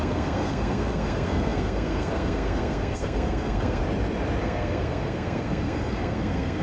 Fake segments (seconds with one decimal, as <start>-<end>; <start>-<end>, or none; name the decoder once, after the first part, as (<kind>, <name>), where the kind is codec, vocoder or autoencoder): 0.0-3.8 (codec, SNAC); 4.4-6.6